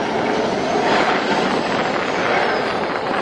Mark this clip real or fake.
real